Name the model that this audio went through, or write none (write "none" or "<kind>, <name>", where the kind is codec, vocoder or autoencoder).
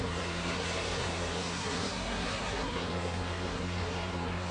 codec, SNAC